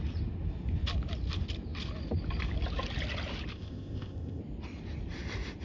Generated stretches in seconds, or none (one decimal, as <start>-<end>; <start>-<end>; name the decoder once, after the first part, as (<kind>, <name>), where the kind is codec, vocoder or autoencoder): 3.5-4.4 (codec, ZipCodec)